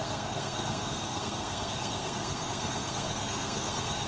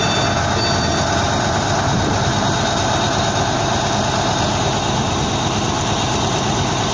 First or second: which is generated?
first